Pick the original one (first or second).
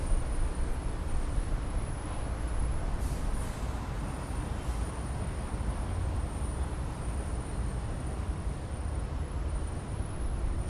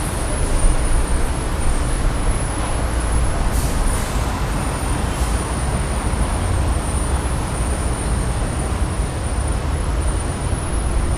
second